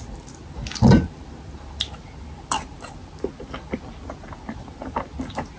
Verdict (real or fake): real